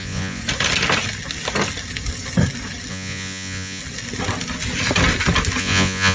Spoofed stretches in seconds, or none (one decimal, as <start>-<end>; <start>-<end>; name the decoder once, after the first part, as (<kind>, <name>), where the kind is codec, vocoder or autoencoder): 0.0-0.4 (vocoder, Vocos); 2.9-3.8; 5.6-6.1